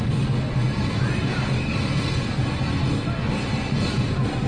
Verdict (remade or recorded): remade